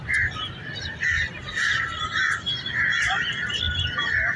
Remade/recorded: recorded